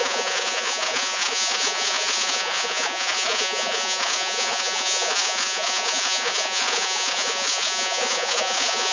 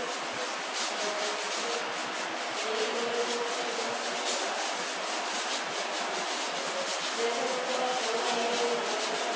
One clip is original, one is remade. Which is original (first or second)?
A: second